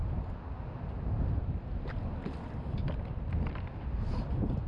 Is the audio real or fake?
real